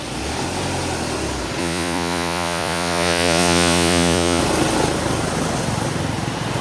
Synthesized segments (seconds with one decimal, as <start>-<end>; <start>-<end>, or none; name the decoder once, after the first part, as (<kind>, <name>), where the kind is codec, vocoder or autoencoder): 1.6-4.4 (vocoder, Vocos)